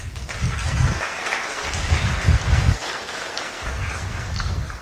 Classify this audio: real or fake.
fake